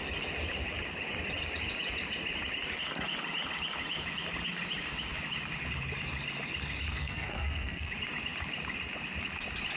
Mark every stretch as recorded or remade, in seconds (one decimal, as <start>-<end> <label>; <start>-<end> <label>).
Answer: 0.0-6.9 recorded; 6.9-7.9 remade; 7.9-9.8 recorded